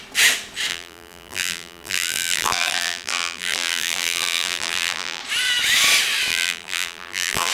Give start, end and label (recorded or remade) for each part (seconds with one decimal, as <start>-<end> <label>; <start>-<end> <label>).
0.0-0.7 recorded; 0.7-5.2 remade; 5.2-6.3 recorded; 6.3-7.5 remade